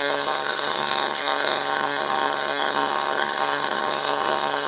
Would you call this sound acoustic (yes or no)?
no